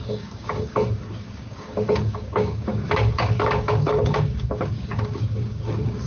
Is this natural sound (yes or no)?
no